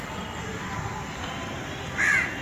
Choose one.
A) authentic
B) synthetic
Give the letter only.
A